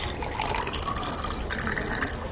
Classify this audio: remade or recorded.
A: recorded